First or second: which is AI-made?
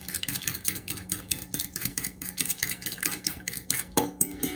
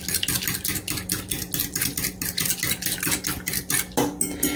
first